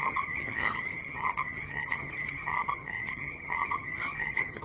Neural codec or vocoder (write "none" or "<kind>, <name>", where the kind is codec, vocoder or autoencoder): vocoder, HiFi-GAN